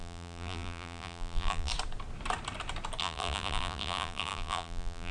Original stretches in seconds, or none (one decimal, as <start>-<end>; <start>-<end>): 1.7-3.0